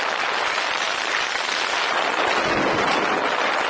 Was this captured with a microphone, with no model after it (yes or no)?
yes